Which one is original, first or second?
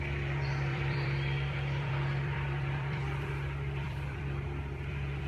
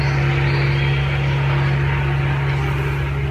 second